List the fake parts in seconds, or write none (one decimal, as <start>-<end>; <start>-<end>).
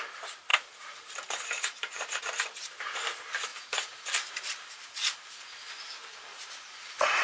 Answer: 0.5-2.2; 3.5-7.2